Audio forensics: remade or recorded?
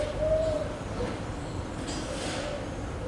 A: remade